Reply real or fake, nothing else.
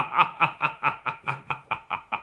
fake